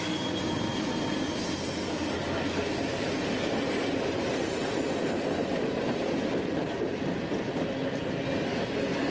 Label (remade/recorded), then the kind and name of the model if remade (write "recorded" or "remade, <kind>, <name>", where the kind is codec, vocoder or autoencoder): recorded